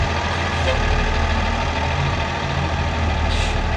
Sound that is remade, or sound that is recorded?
recorded